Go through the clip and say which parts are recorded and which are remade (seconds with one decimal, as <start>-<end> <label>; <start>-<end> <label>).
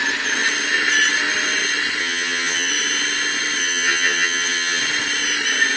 0.0-2.0 recorded; 2.0-2.7 remade; 2.7-3.6 recorded; 3.6-4.8 remade; 4.8-5.8 recorded